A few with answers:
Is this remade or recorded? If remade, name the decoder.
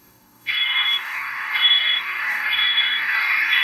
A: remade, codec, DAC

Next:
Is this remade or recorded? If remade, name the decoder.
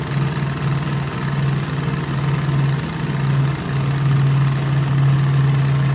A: recorded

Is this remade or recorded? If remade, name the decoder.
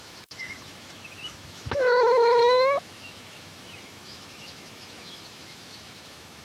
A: remade, autoencoder, DAC-VAE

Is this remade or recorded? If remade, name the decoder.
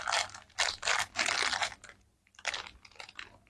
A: recorded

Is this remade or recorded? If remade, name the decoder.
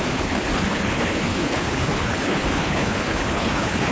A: remade, codec, HILCodec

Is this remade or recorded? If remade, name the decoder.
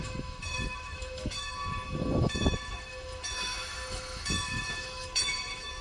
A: remade, autoencoder, DAC-VAE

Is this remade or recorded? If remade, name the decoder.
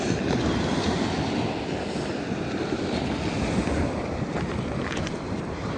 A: recorded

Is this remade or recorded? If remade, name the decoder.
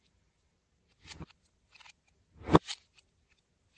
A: recorded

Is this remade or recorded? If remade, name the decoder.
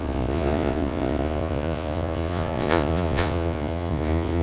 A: remade, vocoder, Vocos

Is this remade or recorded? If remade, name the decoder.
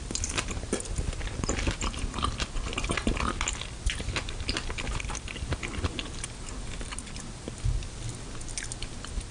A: recorded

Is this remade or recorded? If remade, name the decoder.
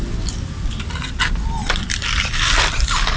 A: recorded